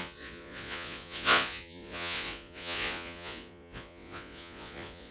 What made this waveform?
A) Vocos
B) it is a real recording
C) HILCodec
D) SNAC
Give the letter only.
A